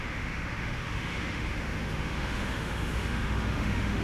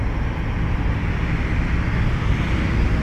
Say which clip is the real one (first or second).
second